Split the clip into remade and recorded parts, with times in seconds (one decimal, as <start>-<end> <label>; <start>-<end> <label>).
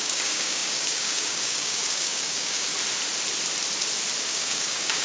0.0-2.7 remade; 2.7-4.2 recorded; 4.2-5.0 remade